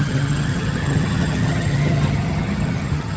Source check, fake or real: fake